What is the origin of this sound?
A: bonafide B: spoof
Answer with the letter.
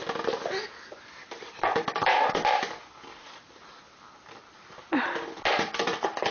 A